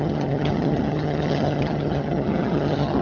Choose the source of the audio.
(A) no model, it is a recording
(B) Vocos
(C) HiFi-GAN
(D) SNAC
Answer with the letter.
C